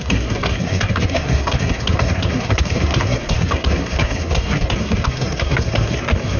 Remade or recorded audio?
remade